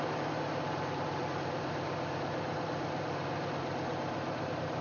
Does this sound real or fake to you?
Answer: fake